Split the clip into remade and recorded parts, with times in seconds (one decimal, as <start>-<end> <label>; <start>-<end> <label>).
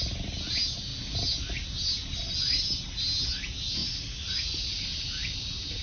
0.0-3.8 recorded; 3.8-4.8 remade; 4.8-5.8 recorded